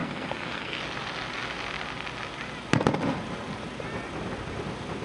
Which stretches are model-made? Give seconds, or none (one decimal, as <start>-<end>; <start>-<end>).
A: 0.0-0.8